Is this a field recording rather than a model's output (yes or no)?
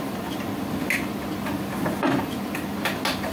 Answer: yes